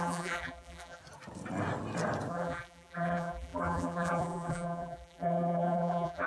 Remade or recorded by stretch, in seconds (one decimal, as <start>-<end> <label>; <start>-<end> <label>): 0.0-1.0 remade; 1.0-2.3 recorded; 2.3-6.3 remade